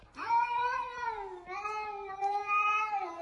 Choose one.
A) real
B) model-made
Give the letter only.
A